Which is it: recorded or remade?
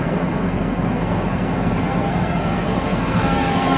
remade